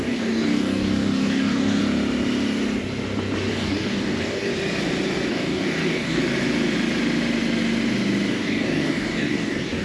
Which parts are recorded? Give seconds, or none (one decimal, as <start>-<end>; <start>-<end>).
1.8-3.5; 4.5-5.3; 6.2-8.3